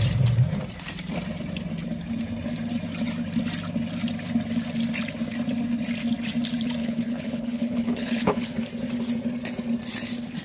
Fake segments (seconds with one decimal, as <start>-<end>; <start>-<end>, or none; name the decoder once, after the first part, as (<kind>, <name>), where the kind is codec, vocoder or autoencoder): 6.8-8.5 (codec, HILCodec)

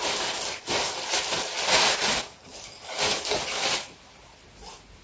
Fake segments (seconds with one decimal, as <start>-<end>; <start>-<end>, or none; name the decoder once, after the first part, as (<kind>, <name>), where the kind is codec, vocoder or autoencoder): none

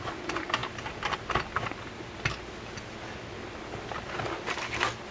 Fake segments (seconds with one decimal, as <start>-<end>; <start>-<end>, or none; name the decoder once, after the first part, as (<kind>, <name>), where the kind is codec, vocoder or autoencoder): none

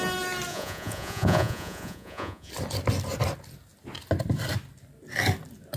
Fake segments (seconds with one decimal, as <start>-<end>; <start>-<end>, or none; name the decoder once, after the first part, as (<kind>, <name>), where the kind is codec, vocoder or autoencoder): 0.5-2.5 (vocoder, Vocos)

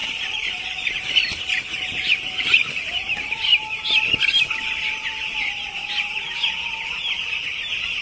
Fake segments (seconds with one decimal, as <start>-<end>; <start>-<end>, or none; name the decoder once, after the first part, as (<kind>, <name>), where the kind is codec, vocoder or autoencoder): 0.0-3.5 (vocoder, BigVGAN v2); 7.3-8.0